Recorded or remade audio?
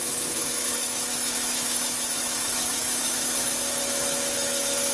remade